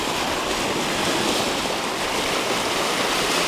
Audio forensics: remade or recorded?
recorded